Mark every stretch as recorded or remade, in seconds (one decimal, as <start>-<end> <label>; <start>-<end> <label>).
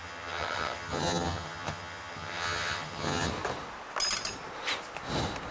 0.0-3.3 remade; 3.3-5.5 recorded